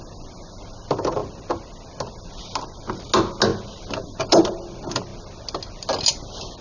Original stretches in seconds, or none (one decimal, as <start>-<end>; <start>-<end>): 0.0-6.6